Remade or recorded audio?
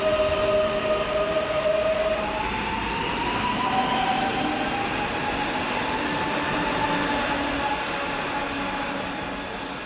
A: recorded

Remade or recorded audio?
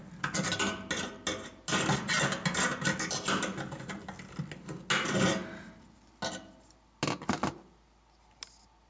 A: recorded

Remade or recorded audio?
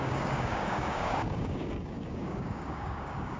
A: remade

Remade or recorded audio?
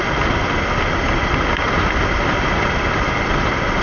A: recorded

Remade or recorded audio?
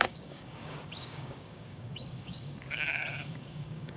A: remade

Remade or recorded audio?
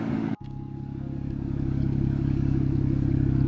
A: remade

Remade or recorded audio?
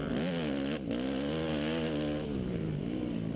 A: recorded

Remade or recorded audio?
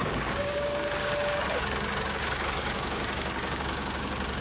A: remade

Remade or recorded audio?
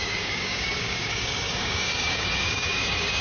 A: remade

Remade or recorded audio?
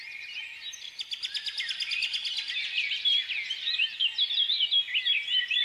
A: recorded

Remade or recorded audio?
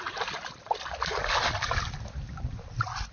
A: recorded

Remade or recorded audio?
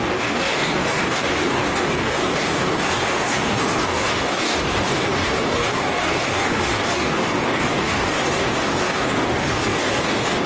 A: remade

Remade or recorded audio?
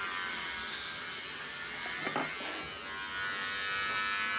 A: recorded